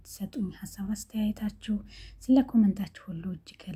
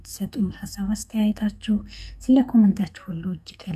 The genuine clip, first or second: first